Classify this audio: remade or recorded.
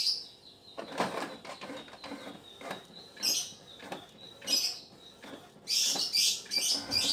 recorded